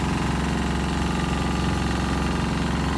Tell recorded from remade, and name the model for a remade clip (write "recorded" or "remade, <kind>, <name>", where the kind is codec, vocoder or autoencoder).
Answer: recorded